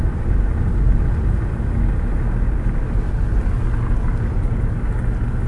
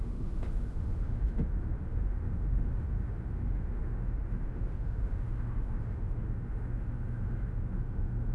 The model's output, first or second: second